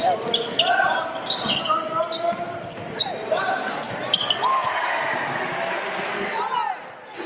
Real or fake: real